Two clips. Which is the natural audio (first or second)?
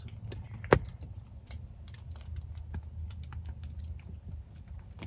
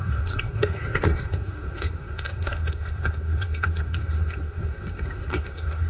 first